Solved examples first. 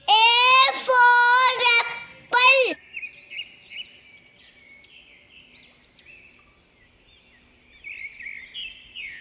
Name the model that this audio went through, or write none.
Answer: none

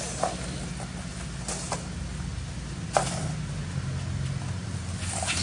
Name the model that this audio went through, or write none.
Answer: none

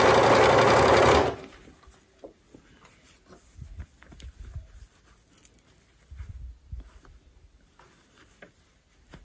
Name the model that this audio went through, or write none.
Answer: none